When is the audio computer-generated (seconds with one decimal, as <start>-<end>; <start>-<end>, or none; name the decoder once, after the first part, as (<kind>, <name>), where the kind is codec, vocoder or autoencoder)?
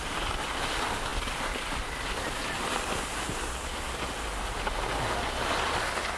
none